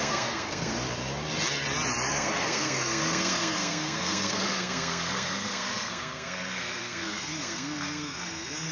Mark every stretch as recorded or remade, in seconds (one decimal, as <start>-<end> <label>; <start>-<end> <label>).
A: 0.0-0.7 remade; 0.7-2.1 recorded; 2.1-8.7 remade